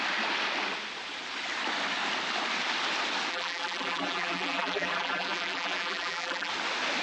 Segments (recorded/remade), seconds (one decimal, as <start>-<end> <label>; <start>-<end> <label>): 0.0-3.3 recorded; 3.3-6.5 remade; 6.5-7.0 recorded